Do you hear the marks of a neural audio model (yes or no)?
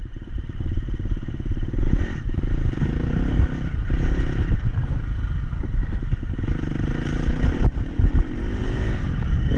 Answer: yes